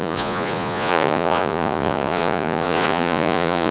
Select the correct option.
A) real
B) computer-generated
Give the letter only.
B